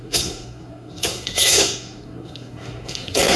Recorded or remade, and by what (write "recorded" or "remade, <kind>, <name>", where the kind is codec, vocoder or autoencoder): remade, codec, SNAC